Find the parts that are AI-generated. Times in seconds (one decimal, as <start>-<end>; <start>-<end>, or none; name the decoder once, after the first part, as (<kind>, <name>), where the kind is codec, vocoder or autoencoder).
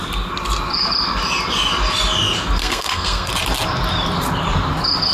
2.6-3.3 (codec, SNAC)